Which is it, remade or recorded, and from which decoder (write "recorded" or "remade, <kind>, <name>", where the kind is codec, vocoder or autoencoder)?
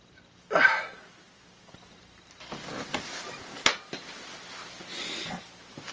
recorded